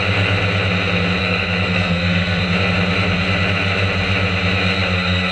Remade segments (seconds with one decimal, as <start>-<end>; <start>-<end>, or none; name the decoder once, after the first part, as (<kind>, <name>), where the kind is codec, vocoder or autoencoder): 1.2-2.4 (codec, SNAC)